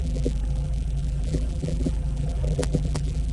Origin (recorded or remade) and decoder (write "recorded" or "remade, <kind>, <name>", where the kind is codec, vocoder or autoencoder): remade, vocoder, BigVGAN v2